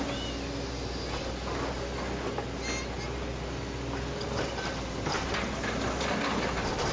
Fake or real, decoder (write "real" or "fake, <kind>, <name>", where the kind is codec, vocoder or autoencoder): real